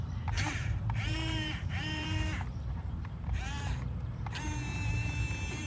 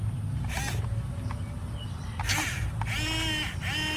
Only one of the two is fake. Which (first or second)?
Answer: first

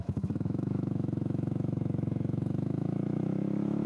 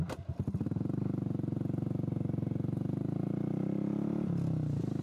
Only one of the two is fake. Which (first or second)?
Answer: first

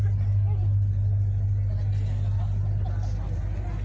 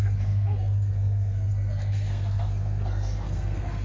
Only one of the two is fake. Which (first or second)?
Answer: second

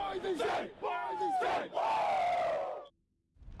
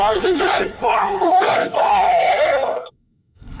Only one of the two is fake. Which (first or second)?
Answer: second